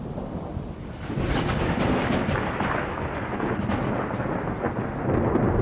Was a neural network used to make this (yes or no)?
no